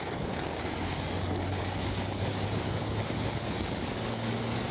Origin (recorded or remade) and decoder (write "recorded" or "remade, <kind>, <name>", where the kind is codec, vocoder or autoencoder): remade, codec, DAC